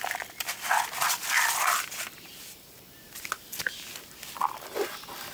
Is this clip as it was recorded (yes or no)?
yes